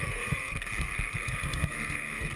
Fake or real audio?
fake